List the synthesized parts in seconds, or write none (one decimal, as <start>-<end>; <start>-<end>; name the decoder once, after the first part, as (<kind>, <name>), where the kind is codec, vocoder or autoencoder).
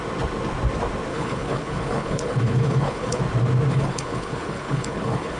1.1-3.2 (codec, HILCodec); 3.7-5.4